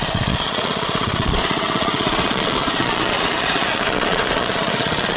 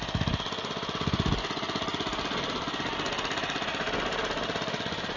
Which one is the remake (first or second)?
first